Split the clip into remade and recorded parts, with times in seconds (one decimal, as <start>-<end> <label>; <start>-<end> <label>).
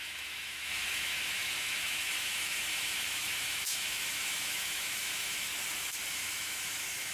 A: 0.0-5.5 remade; 5.5-6.1 recorded; 6.1-7.1 remade